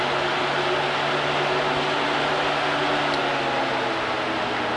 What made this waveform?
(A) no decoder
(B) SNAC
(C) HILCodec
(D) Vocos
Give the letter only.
A